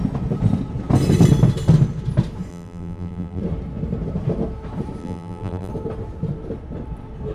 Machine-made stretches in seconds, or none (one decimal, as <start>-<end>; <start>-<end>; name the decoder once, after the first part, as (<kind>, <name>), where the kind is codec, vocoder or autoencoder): 2.5-3.4 (vocoder, BigVGAN v2); 5.0-5.7